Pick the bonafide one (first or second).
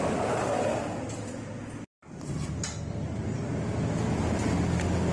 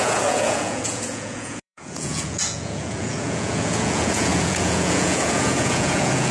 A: first